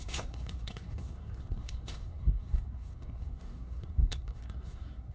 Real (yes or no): no